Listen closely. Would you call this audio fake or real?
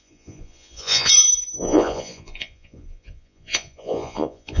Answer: fake